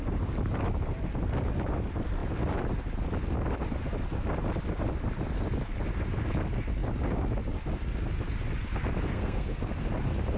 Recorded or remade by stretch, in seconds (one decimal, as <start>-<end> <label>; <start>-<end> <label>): 0.0-9.1 recorded; 9.1-9.7 remade; 9.7-10.4 recorded